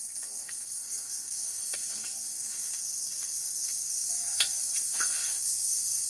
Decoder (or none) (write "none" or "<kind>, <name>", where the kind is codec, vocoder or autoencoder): codec, SNAC